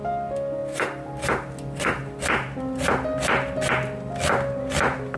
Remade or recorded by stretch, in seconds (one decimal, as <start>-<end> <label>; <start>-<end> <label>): 0.0-5.2 recorded